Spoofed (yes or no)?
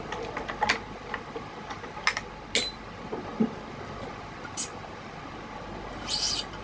no